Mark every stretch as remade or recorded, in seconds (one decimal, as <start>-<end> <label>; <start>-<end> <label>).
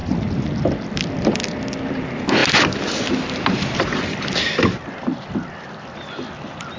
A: 0.0-6.8 recorded